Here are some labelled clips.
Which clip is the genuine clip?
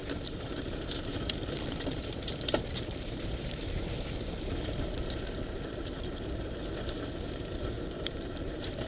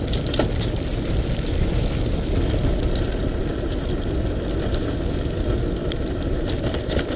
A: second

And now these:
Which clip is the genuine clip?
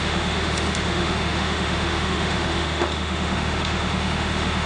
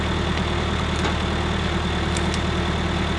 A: second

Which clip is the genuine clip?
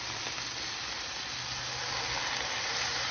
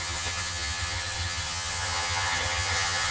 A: first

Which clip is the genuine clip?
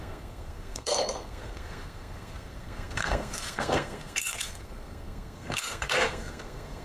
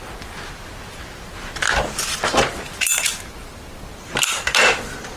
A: second